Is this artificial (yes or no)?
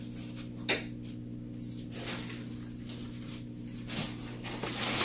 no